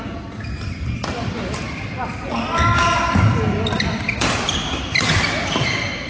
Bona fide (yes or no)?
yes